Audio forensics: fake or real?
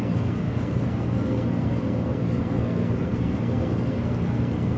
fake